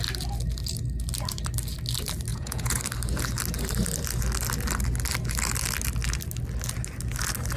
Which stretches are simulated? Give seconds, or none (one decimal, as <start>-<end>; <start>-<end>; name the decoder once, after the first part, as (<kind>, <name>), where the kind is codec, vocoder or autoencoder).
2.3-2.8 (vocoder, Vocos)